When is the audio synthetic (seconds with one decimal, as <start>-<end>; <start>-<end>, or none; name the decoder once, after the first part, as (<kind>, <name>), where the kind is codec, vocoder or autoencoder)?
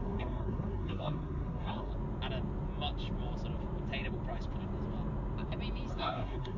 0.0-1.9 (codec, SNAC); 5.9-6.6